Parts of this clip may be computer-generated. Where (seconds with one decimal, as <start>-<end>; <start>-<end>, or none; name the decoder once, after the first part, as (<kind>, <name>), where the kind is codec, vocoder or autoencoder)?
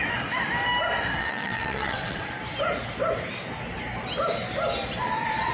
1.2-2.3 (vocoder, WaveNeXt)